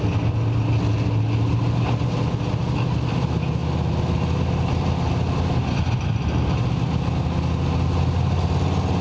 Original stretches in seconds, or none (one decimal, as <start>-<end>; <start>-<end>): 0.0-9.0